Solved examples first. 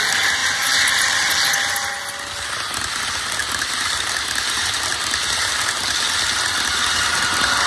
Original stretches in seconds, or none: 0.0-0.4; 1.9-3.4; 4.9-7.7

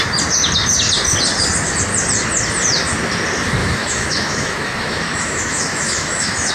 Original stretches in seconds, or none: 0.0-3.6

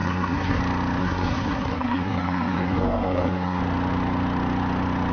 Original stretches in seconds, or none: 0.6-1.0; 3.6-5.1